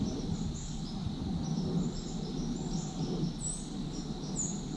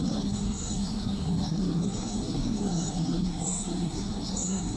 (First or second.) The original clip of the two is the first